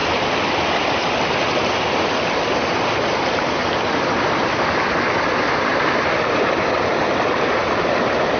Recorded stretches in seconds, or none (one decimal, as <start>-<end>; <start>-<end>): 0.0-8.4